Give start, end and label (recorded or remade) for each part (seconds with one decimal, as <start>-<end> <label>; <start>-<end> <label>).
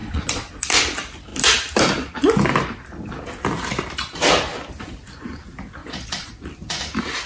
0.0-0.6 remade; 0.6-5.8 recorded; 5.8-6.3 remade; 6.3-7.3 recorded